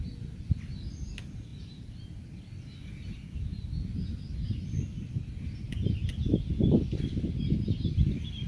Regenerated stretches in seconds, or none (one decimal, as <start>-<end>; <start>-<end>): none

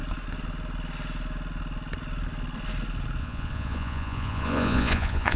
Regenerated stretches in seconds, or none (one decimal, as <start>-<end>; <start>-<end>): 3.2-5.4

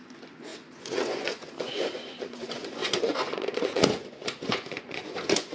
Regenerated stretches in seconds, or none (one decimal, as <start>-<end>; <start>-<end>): 0.0-5.5

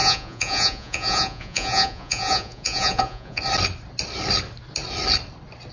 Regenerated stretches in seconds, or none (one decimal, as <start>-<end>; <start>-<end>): 0.0-3.4

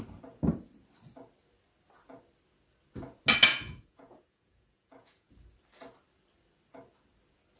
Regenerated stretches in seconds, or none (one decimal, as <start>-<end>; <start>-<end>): 3.5-5.3

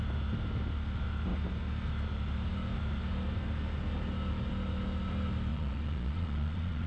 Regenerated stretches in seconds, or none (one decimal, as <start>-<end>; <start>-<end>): 5.5-6.9